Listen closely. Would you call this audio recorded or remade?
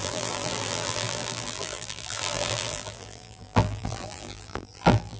remade